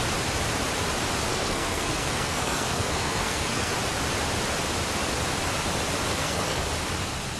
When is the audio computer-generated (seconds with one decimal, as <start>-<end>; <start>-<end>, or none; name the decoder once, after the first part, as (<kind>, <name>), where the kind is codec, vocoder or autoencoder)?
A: 1.3-3.7 (codec, SNAC); 6.1-6.7